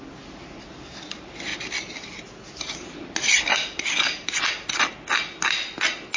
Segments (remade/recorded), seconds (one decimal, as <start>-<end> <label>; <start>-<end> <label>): 0.0-6.2 recorded